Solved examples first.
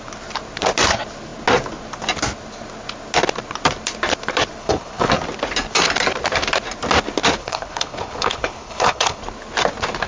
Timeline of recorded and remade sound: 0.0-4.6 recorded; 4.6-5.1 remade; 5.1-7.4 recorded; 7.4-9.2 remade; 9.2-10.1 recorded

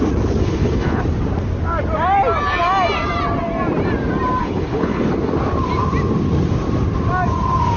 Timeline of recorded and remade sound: 0.0-0.4 recorded; 0.4-1.0 remade; 1.0-4.4 recorded; 4.4-5.1 remade; 5.1-7.8 recorded